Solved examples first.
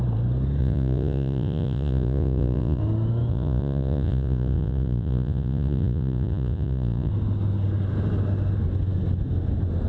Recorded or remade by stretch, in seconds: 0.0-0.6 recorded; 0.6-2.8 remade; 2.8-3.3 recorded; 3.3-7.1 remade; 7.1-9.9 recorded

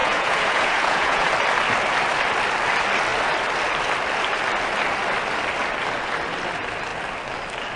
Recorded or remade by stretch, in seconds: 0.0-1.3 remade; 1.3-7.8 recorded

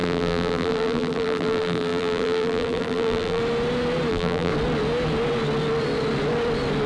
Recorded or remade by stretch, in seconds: 0.0-3.4 remade; 3.4-4.1 recorded; 4.1-4.5 remade; 4.5-6.9 recorded